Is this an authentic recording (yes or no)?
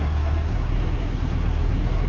no